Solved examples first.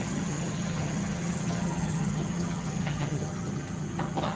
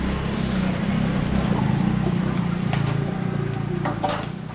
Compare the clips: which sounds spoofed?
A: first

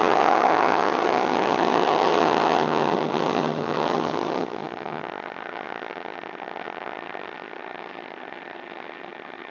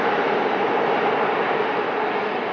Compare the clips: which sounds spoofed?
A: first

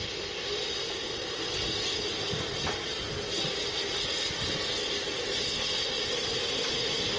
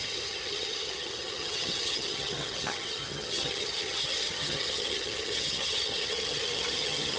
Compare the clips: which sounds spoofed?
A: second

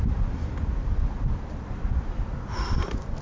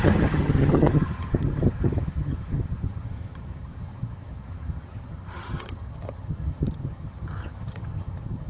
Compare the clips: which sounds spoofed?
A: second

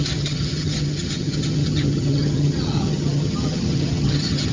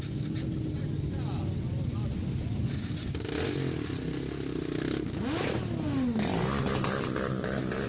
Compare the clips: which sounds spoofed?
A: first